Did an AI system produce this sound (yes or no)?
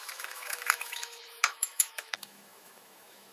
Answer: yes